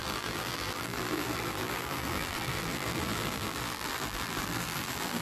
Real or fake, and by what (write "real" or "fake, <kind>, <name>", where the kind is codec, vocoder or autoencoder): fake, vocoder, BigVGAN v2